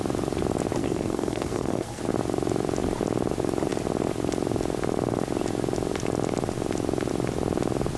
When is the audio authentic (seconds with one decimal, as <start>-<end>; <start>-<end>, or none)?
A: 0.0-0.8; 2.0-8.0